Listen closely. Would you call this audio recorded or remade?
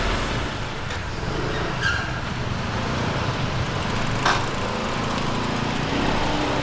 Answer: recorded